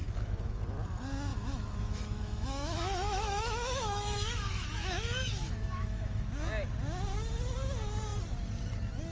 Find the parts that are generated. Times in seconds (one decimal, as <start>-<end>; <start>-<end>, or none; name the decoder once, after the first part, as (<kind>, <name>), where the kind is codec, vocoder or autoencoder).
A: 0.0-0.6 (autoencoder, DAC-VAE); 1.3-6.3

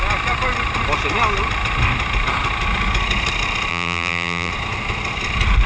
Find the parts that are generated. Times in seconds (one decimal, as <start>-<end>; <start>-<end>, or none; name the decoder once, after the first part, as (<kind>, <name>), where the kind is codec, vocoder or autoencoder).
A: 3.7-4.5 (vocoder, BigVGAN v2)